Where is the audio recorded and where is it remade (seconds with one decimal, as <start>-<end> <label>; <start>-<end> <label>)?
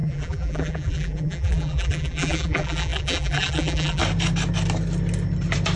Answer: 0.0-4.0 remade; 4.0-5.8 recorded